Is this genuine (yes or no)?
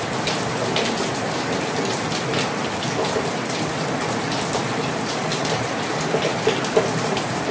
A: yes